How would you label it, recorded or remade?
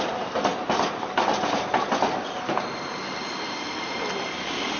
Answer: recorded